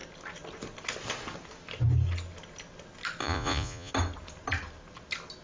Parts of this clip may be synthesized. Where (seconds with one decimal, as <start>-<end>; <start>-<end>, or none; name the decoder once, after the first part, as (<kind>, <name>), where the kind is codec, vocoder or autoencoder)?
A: 3.2-3.9 (vocoder, Vocos)